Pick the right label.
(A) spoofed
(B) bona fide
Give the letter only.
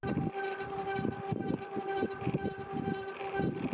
B